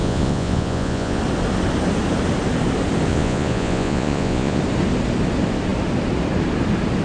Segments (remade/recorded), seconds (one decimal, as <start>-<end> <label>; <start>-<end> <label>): 0.0-1.2 remade; 1.2-3.1 recorded; 3.1-4.6 remade; 4.6-7.0 recorded